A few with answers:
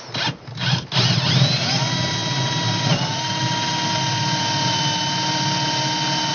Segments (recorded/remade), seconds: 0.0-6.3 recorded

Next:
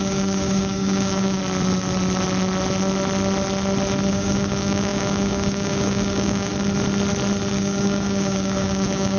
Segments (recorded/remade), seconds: 0.0-1.4 remade; 1.4-4.1 recorded; 4.1-6.5 remade; 6.5-7.5 recorded; 7.5-9.2 remade

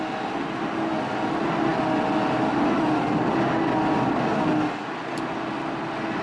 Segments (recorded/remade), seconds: 0.0-6.2 recorded

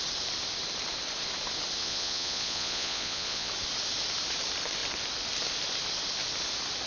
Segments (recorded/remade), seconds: 0.0-1.8 recorded; 1.8-3.5 remade; 3.5-6.9 recorded

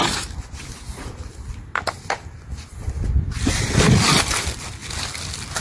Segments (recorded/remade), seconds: 0.0-5.6 recorded

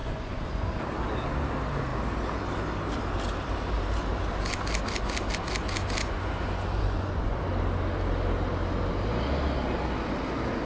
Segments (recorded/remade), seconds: 0.0-0.8 remade; 0.8-6.0 recorded; 6.0-7.4 remade; 7.4-10.7 recorded